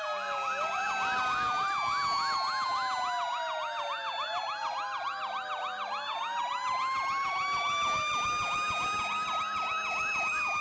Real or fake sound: real